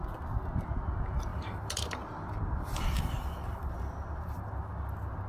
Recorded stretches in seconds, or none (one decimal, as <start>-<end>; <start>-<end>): 0.0-1.3; 4.5-5.3